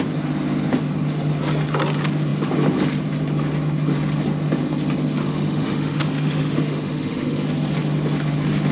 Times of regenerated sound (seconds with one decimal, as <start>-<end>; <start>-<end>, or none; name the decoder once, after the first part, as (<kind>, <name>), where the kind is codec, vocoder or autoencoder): 5.2-7.5 (autoencoder, DAC-VAE)